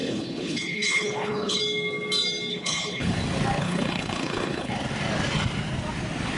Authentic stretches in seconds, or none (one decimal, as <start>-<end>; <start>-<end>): 1.6-2.5; 3.1-3.6; 4.7-6.4